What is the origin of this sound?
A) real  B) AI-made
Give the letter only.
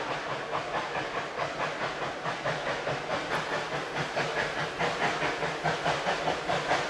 A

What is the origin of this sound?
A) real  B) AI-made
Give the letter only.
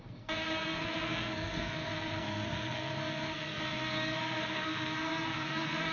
B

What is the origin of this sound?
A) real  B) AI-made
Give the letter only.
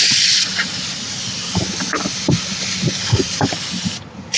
A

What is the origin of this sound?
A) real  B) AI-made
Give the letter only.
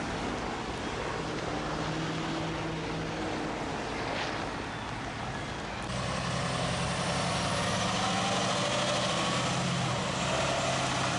A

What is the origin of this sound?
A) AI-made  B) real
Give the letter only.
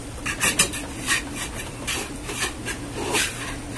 B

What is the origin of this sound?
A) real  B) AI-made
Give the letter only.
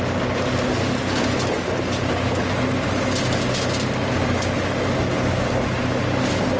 A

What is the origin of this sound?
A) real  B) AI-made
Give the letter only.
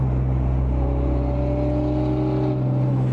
A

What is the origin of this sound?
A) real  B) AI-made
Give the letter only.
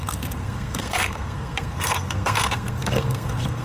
B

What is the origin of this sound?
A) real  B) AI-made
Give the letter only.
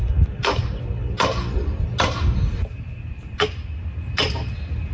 A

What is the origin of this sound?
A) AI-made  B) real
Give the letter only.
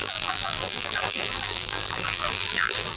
A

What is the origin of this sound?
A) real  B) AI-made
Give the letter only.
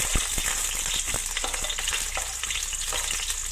A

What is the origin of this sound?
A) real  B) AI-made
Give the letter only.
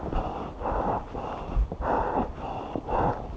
A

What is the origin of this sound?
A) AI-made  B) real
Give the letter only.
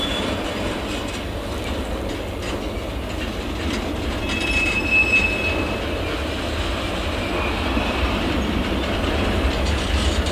B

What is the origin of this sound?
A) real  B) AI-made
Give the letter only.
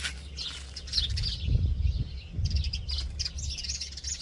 A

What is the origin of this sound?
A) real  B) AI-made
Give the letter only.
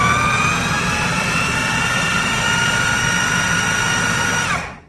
A